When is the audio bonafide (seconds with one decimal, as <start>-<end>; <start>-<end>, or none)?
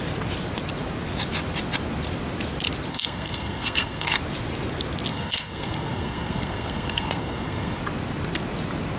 0.0-2.9; 4.2-5.1; 7.8-9.0